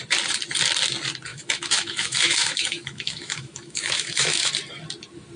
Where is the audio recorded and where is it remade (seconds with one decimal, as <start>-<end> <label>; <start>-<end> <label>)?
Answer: 0.0-1.3 recorded; 1.3-4.5 remade; 4.5-5.4 recorded

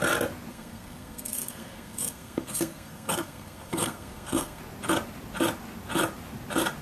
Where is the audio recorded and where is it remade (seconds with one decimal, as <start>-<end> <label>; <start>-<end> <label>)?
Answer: 0.0-0.5 recorded; 0.5-4.6 remade; 4.6-6.8 recorded

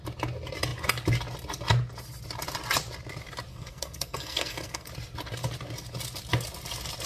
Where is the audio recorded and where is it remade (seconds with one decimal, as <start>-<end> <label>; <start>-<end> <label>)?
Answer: 0.0-3.5 recorded; 3.5-4.9 remade; 4.9-7.1 recorded